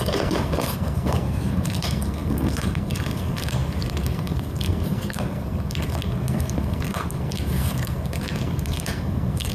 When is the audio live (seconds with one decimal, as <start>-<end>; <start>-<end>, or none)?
none